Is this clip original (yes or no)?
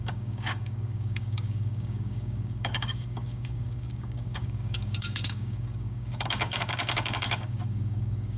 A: no